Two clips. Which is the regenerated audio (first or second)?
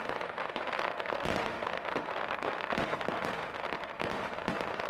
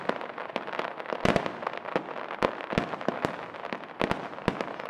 first